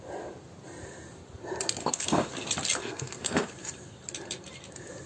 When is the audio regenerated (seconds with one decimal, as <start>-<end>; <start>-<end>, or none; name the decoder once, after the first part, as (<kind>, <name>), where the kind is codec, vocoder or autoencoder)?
1.8-2.3 (codec, SNAC); 2.8-3.5